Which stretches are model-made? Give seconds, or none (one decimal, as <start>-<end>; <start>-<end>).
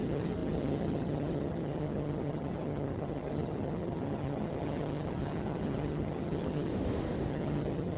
0.0-6.7; 7.3-8.0